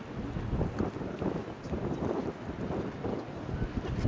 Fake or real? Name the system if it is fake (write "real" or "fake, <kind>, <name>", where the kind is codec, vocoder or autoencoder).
real